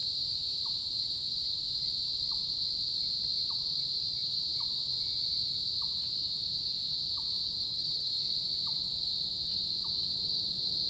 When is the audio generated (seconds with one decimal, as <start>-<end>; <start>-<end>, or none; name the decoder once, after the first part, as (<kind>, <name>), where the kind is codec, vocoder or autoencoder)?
7.6-8.2 (vocoder, HiFi-GAN)